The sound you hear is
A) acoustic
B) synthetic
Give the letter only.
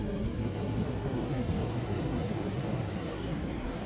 B